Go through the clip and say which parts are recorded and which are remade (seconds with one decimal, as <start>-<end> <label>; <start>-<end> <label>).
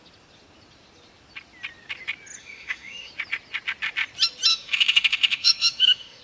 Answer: 0.0-2.4 recorded; 2.4-3.1 remade; 3.1-4.5 recorded; 4.5-6.2 remade